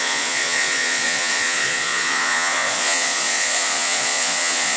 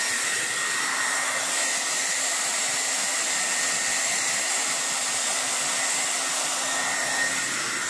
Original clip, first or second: second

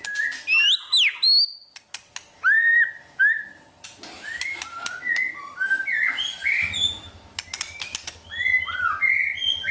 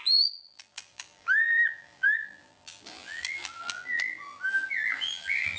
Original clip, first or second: first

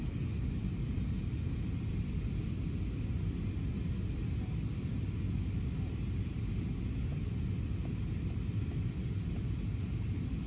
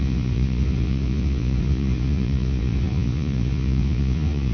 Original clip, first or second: first